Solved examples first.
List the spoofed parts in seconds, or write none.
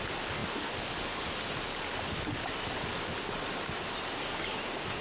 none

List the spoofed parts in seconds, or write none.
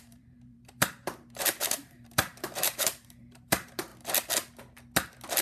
0.0-3.9 (vocoder, BigVGAN v2)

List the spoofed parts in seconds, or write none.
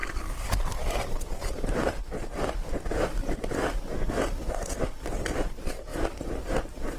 3.2-4.5 (vocoder, BigVGAN v2)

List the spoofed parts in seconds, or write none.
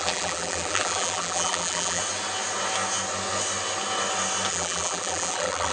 0.0-2.0 (vocoder, BigVGAN v2); 4.5-5.7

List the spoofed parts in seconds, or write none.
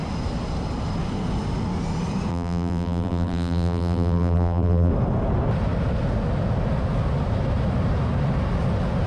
2.3-4.9 (vocoder, BigVGAN v2)